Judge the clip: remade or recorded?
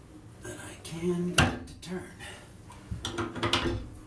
recorded